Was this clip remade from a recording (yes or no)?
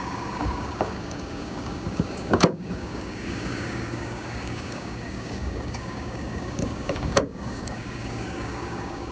yes